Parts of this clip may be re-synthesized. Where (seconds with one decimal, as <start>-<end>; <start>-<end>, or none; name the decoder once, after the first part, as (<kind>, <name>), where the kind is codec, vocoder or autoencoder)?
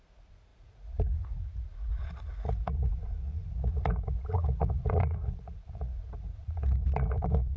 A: 0.0-7.6 (vocoder, Vocos)